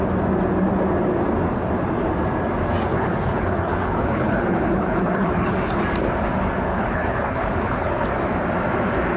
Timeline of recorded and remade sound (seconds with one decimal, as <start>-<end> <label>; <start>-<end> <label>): 0.0-2.9 recorded; 2.9-5.8 remade; 5.8-6.7 recorded; 6.7-8.1 remade; 8.1-9.2 recorded